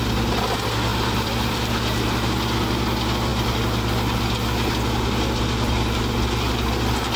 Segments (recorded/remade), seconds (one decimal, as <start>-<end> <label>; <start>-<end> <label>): 0.0-0.9 recorded; 0.9-1.7 remade; 1.7-7.2 recorded